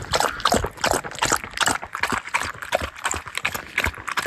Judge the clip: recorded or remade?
recorded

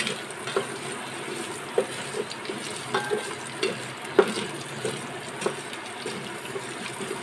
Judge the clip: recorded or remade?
recorded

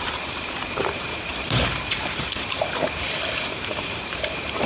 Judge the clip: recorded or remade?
remade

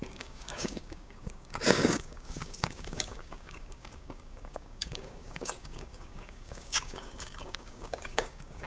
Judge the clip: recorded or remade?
remade